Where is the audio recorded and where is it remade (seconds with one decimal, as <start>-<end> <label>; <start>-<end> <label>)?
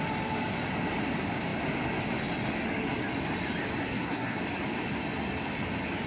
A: 0.0-3.8 recorded; 3.8-4.4 remade; 4.4-6.1 recorded